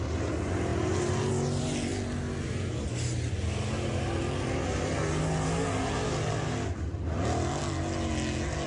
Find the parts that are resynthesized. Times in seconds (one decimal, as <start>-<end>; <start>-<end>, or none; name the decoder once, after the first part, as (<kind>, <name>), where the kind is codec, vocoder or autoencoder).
none